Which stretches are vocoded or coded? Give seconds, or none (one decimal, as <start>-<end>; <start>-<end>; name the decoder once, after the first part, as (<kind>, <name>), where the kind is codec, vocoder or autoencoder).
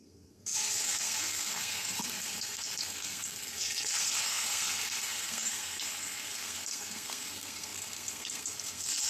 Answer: 0.0-9.1 (codec, SNAC)